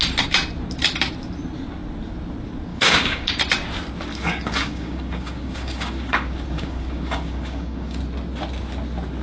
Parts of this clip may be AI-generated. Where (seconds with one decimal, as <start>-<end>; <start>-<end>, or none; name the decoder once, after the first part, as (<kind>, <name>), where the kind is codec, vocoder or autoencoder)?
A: 2.7-3.3 (codec, DAC); 4.1-8.0